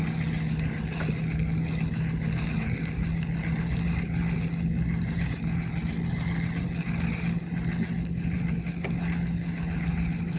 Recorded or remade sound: recorded